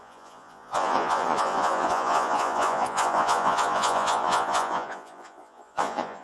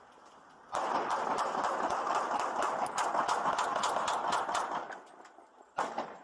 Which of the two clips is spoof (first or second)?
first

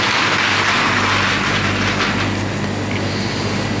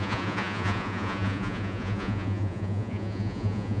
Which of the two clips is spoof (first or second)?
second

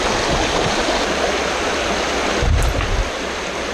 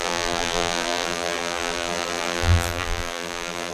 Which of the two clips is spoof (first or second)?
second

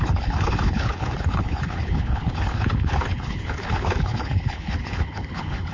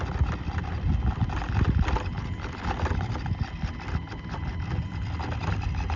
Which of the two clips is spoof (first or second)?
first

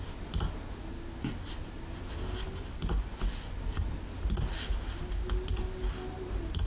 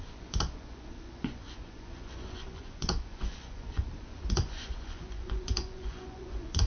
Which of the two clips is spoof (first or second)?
second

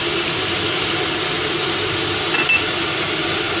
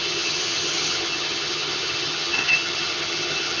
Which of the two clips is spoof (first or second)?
second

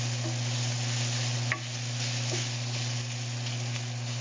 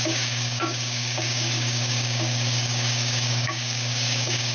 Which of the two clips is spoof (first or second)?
second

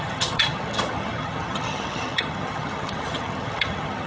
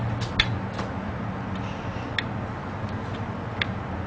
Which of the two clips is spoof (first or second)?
first